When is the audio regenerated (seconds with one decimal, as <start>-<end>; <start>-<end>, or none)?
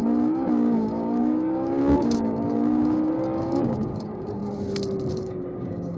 0.0-4.4; 5.1-6.0